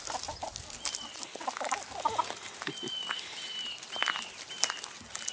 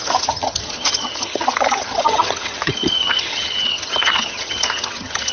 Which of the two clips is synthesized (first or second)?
second